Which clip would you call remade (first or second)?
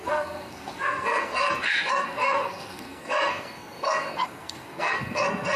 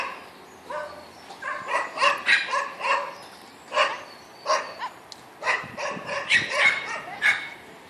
first